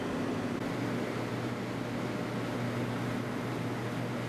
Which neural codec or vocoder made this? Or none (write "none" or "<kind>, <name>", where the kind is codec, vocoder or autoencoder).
none